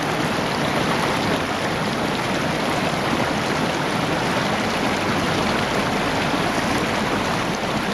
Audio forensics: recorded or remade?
recorded